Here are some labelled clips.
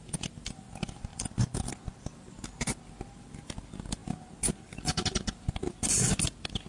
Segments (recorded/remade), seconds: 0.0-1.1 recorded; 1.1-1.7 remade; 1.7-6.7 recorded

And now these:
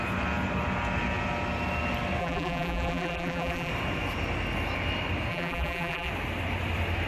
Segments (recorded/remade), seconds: 0.0-2.2 recorded; 2.2-3.7 remade; 3.7-5.3 recorded; 5.3-6.1 remade; 6.1-7.1 recorded